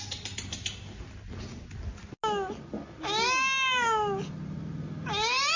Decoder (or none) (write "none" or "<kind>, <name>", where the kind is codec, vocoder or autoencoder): none